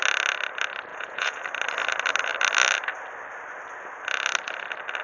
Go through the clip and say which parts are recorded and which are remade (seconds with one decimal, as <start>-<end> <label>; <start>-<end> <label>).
0.0-0.9 recorded; 0.9-1.4 remade; 1.4-5.0 recorded